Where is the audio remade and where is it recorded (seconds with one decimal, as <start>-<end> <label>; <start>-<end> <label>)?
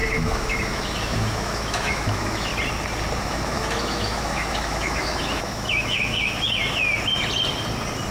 0.0-2.5 remade; 2.5-3.2 recorded; 3.2-6.6 remade; 6.6-8.1 recorded